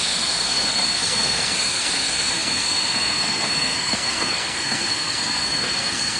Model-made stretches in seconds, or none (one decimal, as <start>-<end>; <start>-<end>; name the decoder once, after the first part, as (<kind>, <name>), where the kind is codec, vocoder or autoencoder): 0.0-6.2 (codec, SNAC)